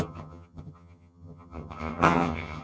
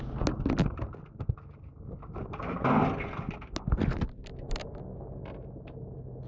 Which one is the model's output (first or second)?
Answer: first